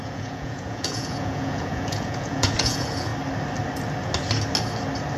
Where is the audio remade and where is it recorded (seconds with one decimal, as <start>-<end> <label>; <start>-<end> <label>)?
0.0-3.1 remade; 3.1-5.2 recorded